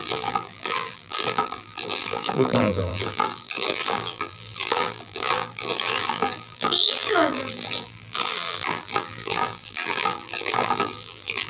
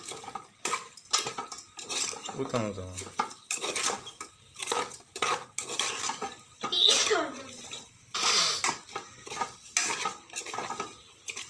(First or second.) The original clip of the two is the second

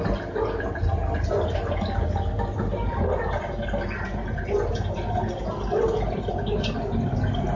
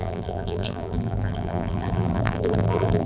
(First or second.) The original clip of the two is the first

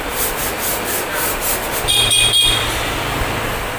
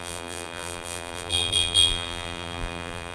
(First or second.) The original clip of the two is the first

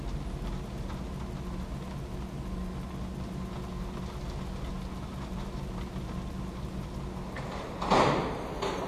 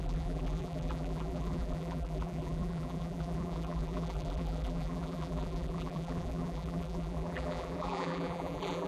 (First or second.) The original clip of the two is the first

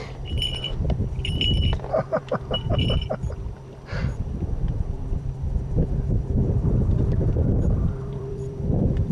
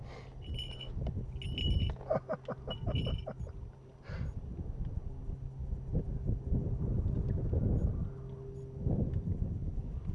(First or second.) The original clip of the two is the second